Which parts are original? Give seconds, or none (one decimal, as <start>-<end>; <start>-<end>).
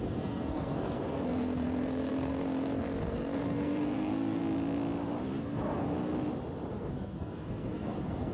4.4-5.4; 6.1-6.7